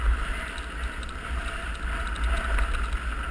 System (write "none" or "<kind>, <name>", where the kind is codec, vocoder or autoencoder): none